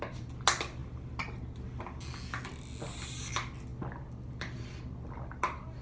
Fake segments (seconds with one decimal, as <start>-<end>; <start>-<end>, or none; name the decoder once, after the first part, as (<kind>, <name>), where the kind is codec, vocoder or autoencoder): none